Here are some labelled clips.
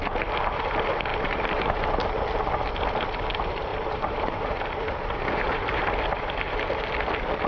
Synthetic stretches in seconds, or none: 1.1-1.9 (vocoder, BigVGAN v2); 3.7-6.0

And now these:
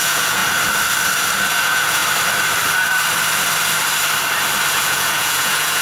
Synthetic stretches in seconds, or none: 0.0-0.4 (vocoder, Vocos); 1.5-2.0; 4.7-5.8

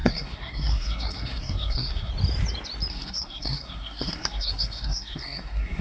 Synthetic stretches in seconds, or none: 0.0-2.1 (codec, SNAC); 2.9-5.8

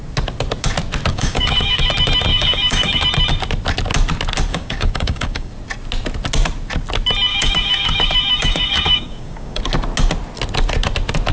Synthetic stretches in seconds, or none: 1.1-1.9 (codec, DAC); 2.3-3.0; 4.5-5.5; 7.3-9.6

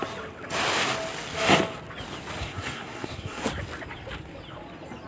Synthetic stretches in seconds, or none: 2.4-3.4 (codec, SNAC)

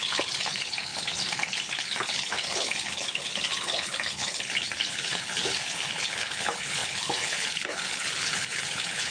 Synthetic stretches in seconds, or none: 0.0-9.1 (codec, HILCodec)

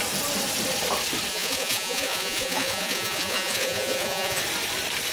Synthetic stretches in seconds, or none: 1.3-4.4 (vocoder, Vocos)

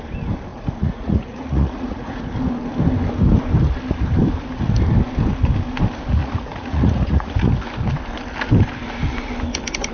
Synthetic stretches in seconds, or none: 0.5-2.2 (vocoder, Vocos); 6.2-7.5